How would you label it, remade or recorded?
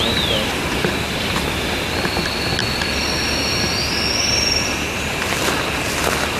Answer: recorded